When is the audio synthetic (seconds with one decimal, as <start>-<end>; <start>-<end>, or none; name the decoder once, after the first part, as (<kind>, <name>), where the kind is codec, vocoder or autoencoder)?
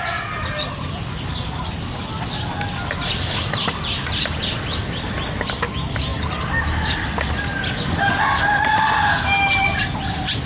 none